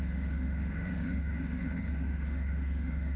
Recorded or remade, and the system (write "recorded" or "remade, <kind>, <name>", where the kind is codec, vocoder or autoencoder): remade, autoencoder, DAC-VAE